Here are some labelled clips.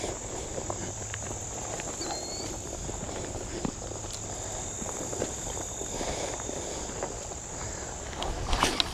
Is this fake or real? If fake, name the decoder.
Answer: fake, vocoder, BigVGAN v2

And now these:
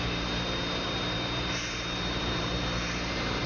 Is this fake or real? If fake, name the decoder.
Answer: fake, vocoder, BigVGAN v2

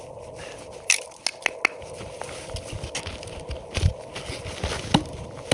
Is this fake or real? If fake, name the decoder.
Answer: real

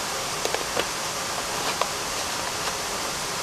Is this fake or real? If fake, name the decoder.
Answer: real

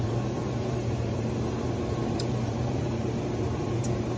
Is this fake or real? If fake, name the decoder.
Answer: fake, vocoder, BigVGAN v2